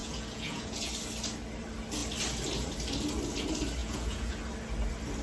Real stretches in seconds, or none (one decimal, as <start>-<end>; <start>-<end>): 0.9-3.8; 4.4-5.2